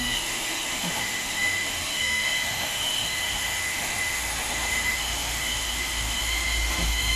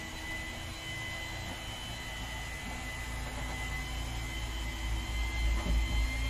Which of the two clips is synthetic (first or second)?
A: first